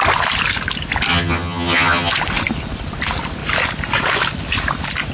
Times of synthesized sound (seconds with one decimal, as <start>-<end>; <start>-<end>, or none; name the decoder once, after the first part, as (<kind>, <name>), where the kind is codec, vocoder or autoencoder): 1.1-2.1 (vocoder, HiFi-GAN)